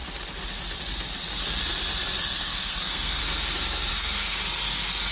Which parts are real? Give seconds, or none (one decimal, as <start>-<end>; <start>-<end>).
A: 0.0-2.2; 3.2-3.9; 4.4-5.1